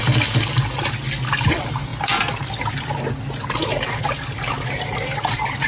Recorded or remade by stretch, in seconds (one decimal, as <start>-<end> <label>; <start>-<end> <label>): 0.0-5.7 recorded